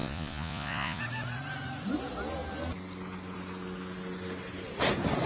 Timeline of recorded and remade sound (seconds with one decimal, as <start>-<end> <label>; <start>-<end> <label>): 0.0-1.0 remade; 1.0-5.3 recorded